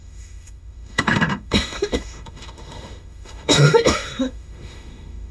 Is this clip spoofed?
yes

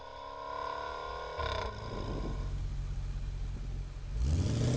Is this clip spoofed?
no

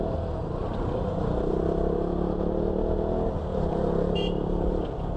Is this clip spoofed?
no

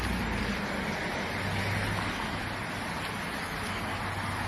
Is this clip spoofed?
no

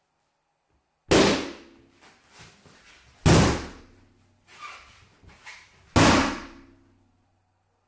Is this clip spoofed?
no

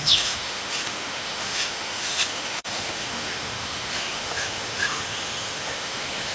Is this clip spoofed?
yes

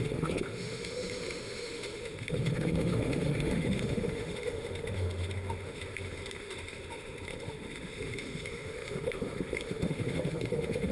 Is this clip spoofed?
yes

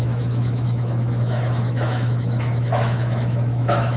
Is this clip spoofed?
yes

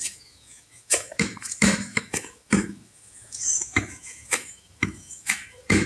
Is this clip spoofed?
yes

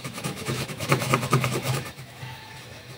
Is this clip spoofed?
yes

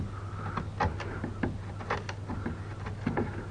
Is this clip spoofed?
no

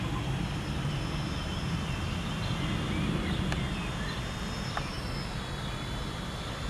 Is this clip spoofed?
no